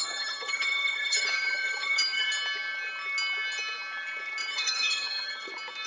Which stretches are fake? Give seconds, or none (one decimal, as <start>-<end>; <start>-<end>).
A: 0.0-2.3; 4.4-5.5